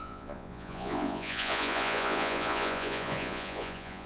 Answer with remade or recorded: remade